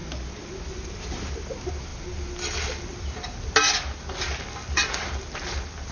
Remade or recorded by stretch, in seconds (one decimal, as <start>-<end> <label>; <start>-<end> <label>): 0.0-5.9 recorded